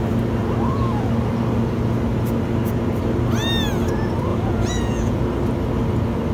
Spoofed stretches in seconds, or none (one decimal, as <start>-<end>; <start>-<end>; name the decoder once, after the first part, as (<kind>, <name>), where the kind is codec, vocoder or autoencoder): 4.3-5.2 (vocoder, Vocos)